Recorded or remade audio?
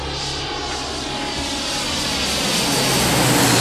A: recorded